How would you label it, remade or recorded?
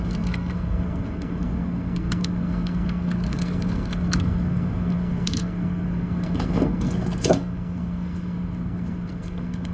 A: remade